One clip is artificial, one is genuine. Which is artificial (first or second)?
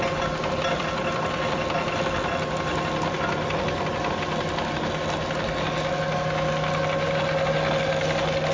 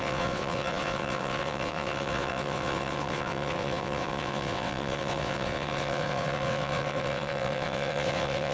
second